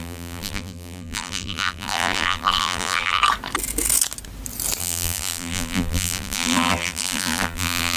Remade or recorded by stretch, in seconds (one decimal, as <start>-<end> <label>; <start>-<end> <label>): 0.0-3.2 remade; 3.2-4.8 recorded; 4.8-8.0 remade